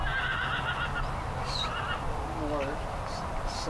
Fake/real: real